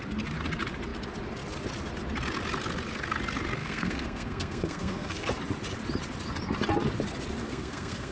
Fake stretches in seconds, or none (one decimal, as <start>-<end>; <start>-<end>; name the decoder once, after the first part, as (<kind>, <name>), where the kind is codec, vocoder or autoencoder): 3.6-5.3 (codec, SNAC); 7.4-8.1